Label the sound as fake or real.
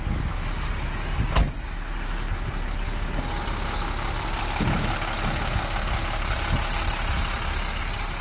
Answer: real